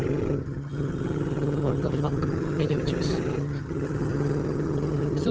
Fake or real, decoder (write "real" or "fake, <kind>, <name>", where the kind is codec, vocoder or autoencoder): fake, vocoder, HiFi-GAN